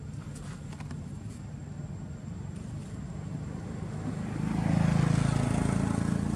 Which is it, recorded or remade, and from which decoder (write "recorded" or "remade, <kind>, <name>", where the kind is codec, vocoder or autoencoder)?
recorded